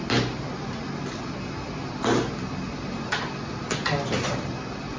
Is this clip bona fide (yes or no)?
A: yes